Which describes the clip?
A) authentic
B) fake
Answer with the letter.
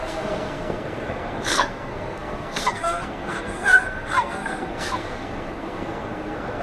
B